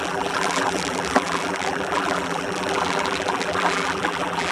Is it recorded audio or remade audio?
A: remade